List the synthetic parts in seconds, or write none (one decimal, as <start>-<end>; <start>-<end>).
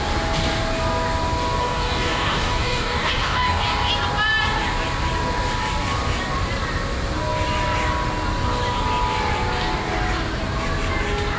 1.6-3.9